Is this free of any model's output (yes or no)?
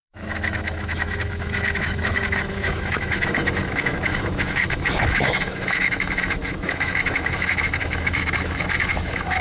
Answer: no